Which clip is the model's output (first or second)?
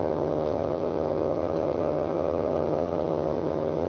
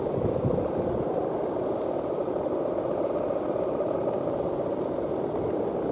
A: first